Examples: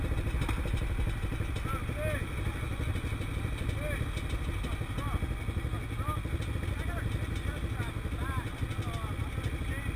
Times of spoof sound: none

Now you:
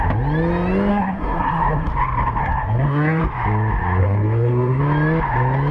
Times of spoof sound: 0.9-1.9 (codec, SNAC); 2.4-3.2; 4.0-4.8

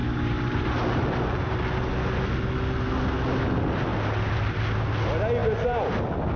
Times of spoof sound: 0.0-1.6 (vocoder, BigVGAN v2); 3.9-4.6

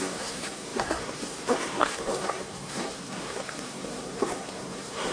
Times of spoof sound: 0.0-5.1 (codec, SNAC)

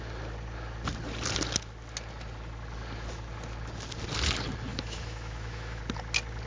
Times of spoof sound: 4.7-5.8 (autoencoder, DAC-VAE)

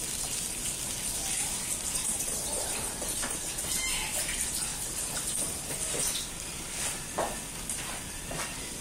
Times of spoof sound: 2.1-3.6 (vocoder, BigVGAN v2)

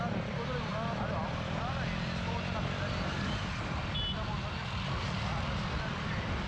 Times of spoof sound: 0.0-0.7 (vocoder, BigVGAN v2); 4.6-6.5

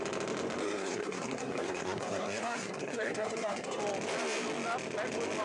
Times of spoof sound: 0.6-3.8 (codec, SNAC)